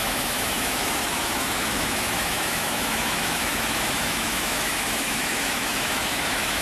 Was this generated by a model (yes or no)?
yes